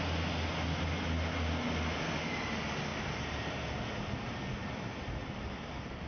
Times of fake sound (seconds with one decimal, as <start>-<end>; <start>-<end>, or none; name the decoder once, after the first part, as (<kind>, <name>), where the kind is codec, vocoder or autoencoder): none